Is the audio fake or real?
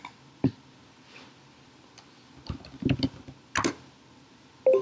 real